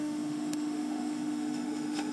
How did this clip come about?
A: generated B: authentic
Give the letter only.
A